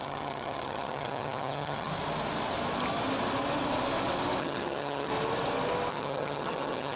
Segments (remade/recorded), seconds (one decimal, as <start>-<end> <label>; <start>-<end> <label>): 0.0-1.9 remade; 1.9-4.4 recorded; 4.4-5.1 remade; 5.1-5.9 recorded; 5.9-7.0 remade